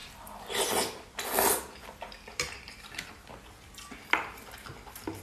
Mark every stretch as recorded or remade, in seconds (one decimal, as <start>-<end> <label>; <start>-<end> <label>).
0.0-5.2 recorded